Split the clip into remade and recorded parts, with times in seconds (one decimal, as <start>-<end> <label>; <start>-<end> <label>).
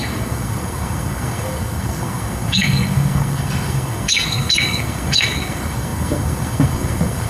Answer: 0.0-7.3 remade